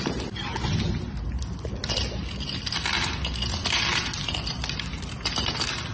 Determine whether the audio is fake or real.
real